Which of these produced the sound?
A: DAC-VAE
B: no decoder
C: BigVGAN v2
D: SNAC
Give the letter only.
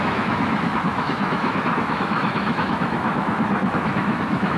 A